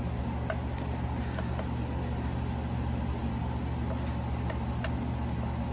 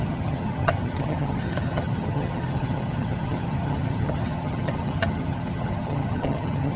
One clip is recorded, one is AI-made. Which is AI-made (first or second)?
second